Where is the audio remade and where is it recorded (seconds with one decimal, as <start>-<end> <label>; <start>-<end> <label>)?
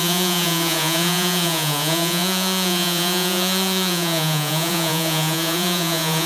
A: 0.0-6.3 remade